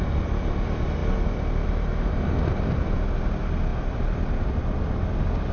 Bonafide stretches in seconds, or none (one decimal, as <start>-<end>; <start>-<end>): 0.0-5.5